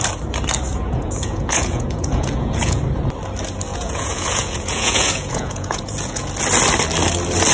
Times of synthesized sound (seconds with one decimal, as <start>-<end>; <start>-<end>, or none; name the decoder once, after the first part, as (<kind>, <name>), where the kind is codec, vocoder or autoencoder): 0.7-2.8 (vocoder, Vocos); 3.7-6.3